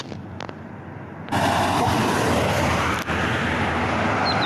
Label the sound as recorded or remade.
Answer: recorded